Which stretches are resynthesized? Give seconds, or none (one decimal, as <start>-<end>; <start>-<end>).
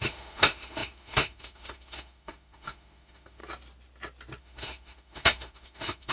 0.0-3.4; 4.4-6.1